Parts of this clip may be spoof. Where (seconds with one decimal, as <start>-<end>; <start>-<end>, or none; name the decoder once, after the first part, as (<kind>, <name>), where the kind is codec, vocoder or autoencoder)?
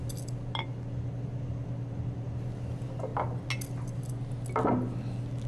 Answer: none